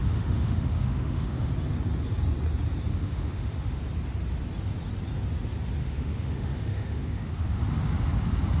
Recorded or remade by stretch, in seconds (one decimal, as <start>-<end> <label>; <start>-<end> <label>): 0.0-1.5 remade; 1.5-2.9 recorded; 2.9-3.8 remade; 3.8-5.8 recorded; 5.8-7.6 remade; 7.6-8.6 recorded